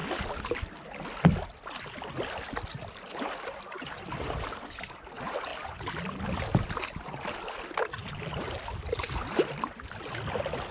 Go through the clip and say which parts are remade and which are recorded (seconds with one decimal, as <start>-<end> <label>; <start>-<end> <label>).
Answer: 0.0-10.7 recorded

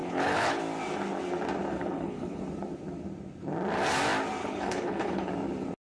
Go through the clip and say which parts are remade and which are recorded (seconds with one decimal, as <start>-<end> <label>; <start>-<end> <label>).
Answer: 0.0-0.6 remade; 0.6-1.7 recorded; 1.7-2.4 remade; 2.4-4.4 recorded; 4.4-5.3 remade; 5.3-5.9 recorded